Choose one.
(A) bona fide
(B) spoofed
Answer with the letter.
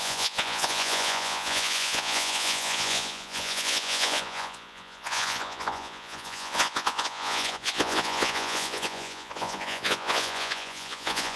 B